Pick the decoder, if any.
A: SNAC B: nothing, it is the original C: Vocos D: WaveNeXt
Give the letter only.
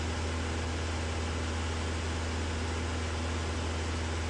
B